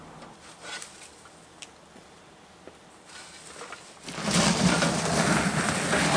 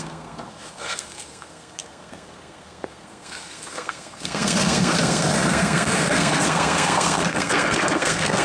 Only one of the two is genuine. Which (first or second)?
first